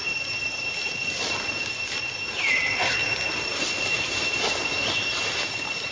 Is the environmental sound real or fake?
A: real